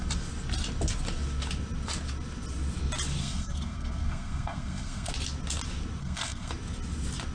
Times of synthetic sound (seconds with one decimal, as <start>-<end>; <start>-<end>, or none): 3.2-5.1; 6.0-6.5